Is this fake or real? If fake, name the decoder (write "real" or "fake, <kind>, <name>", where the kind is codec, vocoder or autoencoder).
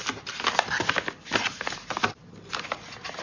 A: real